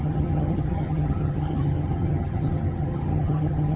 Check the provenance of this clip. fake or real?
fake